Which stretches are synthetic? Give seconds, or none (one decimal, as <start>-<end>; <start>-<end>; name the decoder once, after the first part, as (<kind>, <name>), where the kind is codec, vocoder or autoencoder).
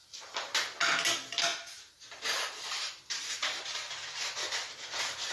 0.0-0.5 (vocoder, BigVGAN v2); 1.5-4.7